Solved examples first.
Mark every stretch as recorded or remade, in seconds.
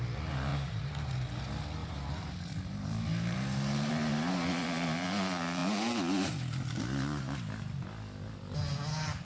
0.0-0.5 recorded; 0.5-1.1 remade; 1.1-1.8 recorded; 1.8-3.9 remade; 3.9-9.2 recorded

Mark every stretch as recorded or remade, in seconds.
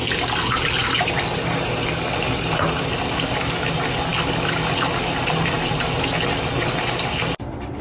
0.0-7.8 recorded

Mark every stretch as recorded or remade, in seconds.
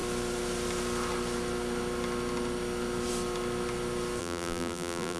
0.0-4.2 recorded; 4.2-5.2 remade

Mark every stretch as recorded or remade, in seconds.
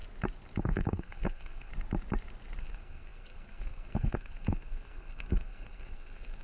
0.0-0.6 recorded; 0.6-1.7 remade; 1.7-2.6 recorded; 2.6-6.4 remade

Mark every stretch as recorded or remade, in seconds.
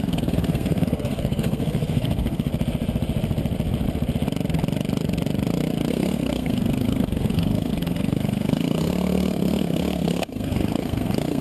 0.0-2.5 remade; 2.5-5.9 recorded; 5.9-11.4 remade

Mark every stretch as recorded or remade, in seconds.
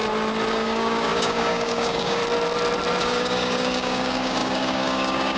0.0-0.5 recorded; 0.5-2.2 remade; 2.2-3.0 recorded; 3.0-5.4 remade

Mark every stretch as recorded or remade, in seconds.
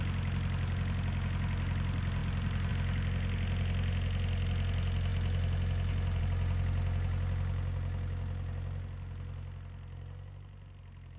0.0-11.2 recorded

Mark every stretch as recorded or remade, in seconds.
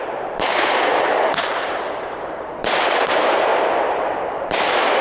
0.0-0.9 remade; 0.9-1.7 recorded; 1.7-3.5 remade; 3.5-4.0 recorded; 4.0-5.0 remade